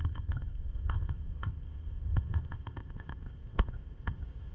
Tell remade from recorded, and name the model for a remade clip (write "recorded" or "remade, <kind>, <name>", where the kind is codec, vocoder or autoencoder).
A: remade, codec, ZipCodec